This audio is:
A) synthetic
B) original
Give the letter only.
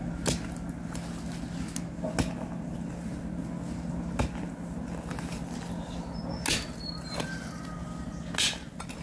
B